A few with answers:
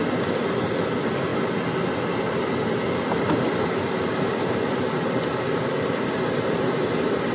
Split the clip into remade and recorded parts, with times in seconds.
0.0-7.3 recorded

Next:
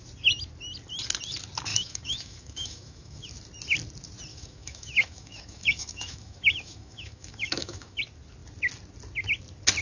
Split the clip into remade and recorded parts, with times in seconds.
0.0-1.7 recorded; 1.7-3.3 remade; 3.3-4.3 recorded; 4.3-8.0 remade; 8.0-9.8 recorded